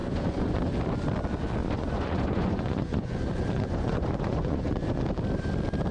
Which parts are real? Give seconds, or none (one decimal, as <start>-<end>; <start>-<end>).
0.6-1.6; 5.0-5.9